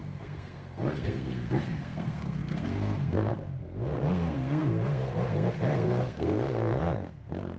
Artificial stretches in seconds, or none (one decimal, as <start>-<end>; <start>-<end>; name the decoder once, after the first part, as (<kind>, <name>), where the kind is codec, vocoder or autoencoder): 0.0-7.6 (codec, SNAC)